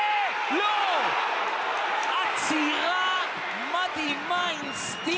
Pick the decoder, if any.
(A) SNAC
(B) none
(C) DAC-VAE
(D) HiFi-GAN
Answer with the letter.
B